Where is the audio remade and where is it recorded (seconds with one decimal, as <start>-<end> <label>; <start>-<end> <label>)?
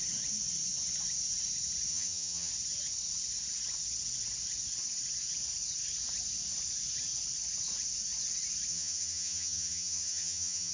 0.0-1.9 recorded; 1.9-2.5 remade; 2.5-8.7 recorded; 8.7-10.7 remade